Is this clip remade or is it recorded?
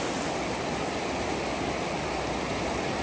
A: recorded